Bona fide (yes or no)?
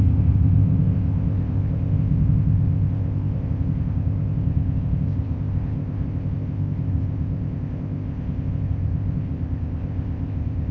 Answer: no